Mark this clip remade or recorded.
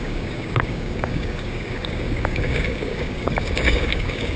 remade